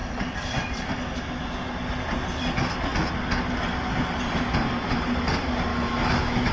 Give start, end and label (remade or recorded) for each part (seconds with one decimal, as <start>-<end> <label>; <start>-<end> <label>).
0.0-5.7 recorded; 5.7-6.5 remade